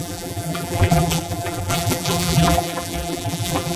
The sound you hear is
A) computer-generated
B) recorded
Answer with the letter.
A